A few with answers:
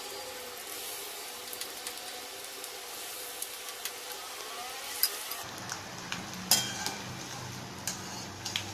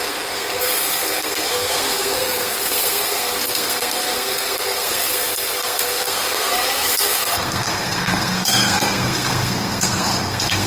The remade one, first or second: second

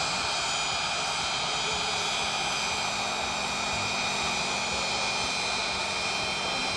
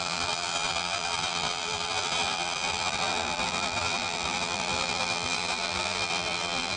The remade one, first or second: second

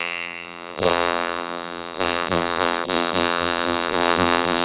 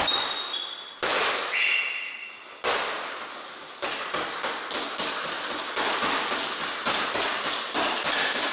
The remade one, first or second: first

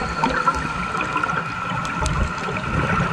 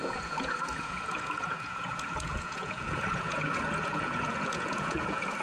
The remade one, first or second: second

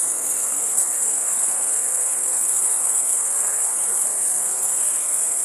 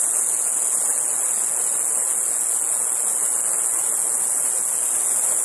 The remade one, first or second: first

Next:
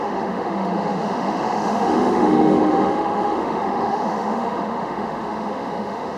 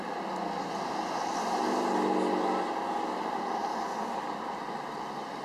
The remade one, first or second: first